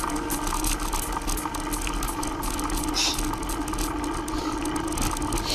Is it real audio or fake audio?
real